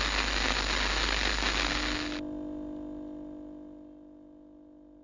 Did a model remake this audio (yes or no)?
no